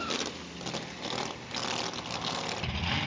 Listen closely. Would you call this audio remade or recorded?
recorded